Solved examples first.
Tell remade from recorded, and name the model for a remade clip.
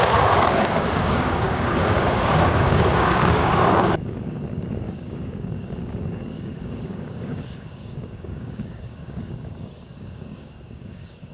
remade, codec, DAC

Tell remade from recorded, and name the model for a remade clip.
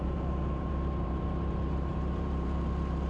remade, vocoder, BigVGAN v2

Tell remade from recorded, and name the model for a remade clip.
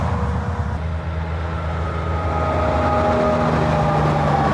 recorded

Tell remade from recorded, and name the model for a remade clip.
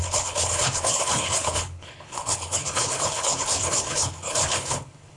remade, codec, HILCodec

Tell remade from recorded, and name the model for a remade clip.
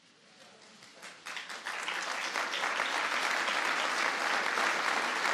recorded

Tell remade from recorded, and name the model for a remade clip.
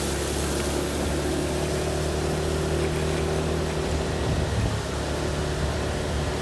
recorded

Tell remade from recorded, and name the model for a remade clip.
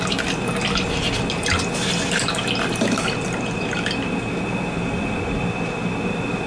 recorded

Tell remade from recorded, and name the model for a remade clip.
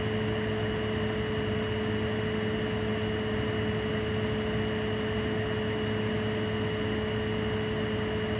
recorded